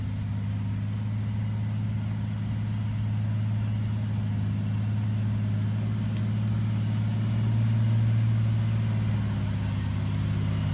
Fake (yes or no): no